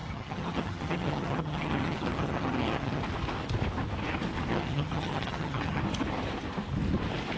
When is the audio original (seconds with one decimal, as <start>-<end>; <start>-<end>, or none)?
3.0-4.5; 5.8-7.4